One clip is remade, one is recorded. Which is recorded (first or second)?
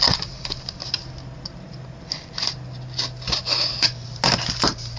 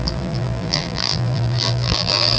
first